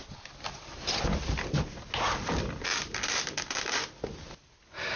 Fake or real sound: real